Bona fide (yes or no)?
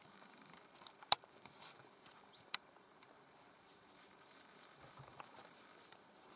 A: no